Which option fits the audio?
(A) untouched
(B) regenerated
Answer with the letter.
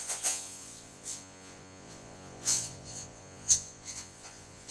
B